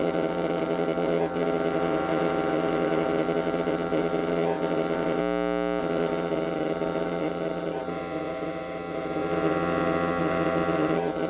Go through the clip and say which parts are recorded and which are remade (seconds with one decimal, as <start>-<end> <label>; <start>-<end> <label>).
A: 0.0-5.2 remade; 5.2-5.8 recorded; 5.8-11.3 remade